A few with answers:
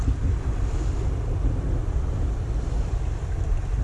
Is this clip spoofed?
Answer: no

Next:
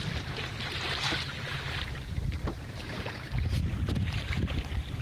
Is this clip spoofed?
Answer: yes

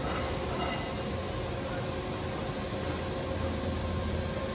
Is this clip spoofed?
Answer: no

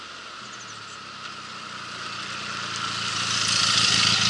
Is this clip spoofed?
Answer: no